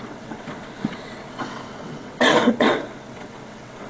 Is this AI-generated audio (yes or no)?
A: yes